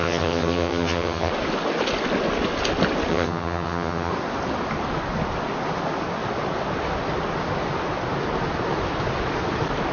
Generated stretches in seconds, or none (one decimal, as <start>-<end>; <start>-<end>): 0.0-1.3; 3.1-4.1